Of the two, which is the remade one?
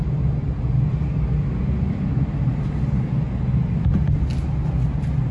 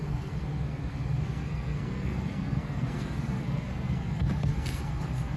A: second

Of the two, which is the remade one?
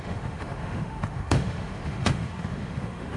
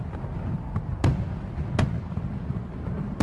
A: first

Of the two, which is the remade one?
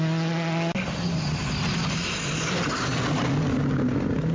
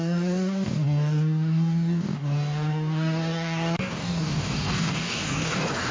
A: second